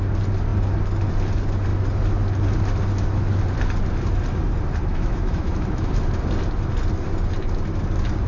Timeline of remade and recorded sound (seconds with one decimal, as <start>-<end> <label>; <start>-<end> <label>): 0.0-4.9 recorded; 4.9-6.0 remade; 6.0-8.3 recorded